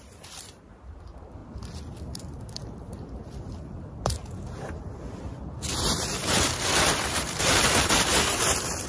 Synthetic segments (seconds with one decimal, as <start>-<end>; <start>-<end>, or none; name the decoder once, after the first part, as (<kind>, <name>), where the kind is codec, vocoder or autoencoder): 0.0-4.2 (vocoder, BigVGAN v2); 5.5-8.9

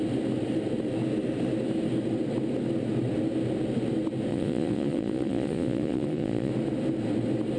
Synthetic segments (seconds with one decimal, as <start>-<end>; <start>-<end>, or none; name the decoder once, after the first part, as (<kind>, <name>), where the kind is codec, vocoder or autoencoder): 4.3-6.5 (vocoder, Vocos)

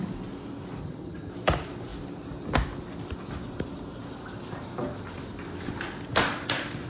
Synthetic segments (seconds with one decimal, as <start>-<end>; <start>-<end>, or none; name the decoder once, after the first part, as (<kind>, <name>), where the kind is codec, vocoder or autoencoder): 0.8-1.3 (vocoder, HiFi-GAN)

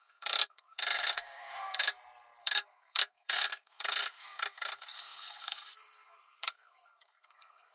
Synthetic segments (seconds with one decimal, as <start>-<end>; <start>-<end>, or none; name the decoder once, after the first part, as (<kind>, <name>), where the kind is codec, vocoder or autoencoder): 0.0-1.9 (codec, SNAC); 2.4-7.7

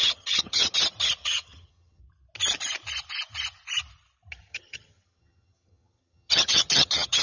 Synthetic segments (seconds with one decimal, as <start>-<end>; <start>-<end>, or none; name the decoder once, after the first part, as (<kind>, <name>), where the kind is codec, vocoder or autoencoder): 0.0-0.7 (vocoder, HiFi-GAN); 1.2-2.0; 4.5-7.2

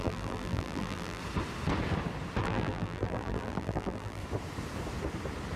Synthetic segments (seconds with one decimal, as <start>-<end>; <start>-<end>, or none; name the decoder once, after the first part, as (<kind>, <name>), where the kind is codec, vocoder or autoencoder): 0.0-1.2 (vocoder, BigVGAN v2); 2.4-4.2